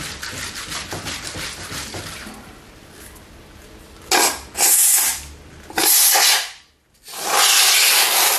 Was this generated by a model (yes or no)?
no